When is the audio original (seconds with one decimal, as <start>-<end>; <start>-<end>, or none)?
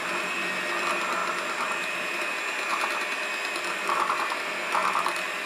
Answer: 0.0-5.5